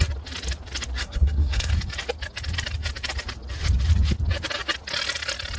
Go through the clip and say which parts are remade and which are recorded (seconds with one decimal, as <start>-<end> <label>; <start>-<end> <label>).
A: 0.0-1.0 recorded; 1.0-1.7 remade; 1.7-5.6 recorded